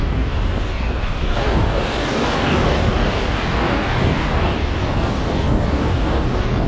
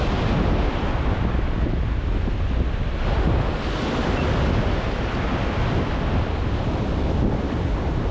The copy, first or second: first